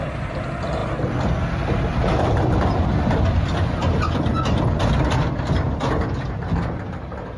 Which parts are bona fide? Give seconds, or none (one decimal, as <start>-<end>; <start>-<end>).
0.0-7.4